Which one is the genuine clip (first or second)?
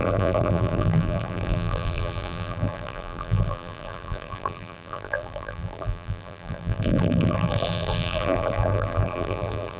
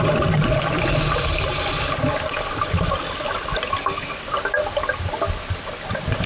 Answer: second